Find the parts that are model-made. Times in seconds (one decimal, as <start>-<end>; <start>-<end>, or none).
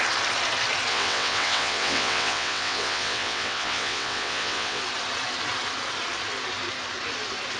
0.9-4.8